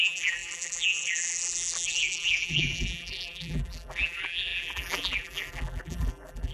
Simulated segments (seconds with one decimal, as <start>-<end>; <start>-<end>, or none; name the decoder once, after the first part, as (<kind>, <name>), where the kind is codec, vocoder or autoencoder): 0.0-6.5 (vocoder, BigVGAN v2)